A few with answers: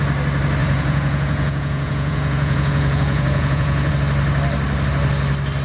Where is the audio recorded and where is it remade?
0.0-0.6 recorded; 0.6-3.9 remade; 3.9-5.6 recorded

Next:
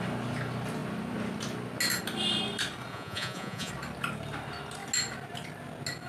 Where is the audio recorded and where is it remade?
0.0-2.9 recorded; 2.9-3.7 remade; 3.7-6.1 recorded